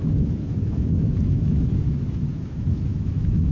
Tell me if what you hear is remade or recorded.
remade